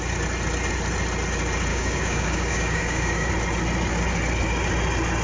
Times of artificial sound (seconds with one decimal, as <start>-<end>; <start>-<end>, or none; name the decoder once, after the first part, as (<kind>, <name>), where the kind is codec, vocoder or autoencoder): 1.7-3.3 (codec, DAC)